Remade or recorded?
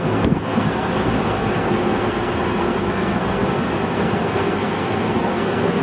remade